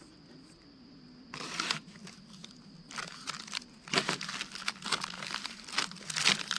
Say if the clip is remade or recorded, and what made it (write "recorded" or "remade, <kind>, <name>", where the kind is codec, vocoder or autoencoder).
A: recorded